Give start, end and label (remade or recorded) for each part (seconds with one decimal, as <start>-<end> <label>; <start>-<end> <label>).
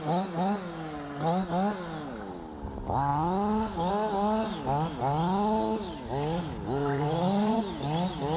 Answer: 0.0-6.8 recorded; 6.8-7.6 remade; 7.6-8.4 recorded